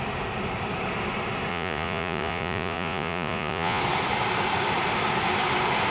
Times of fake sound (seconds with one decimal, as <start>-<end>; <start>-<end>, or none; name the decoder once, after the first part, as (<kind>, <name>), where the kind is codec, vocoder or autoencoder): 1.5-3.8 (vocoder, Vocos)